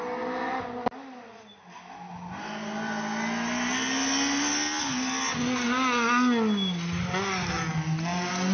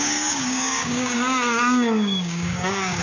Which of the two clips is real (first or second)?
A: first